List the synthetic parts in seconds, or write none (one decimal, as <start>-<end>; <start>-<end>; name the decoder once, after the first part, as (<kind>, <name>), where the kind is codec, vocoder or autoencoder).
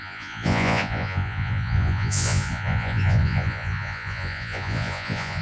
0.0-5.4 (vocoder, Vocos)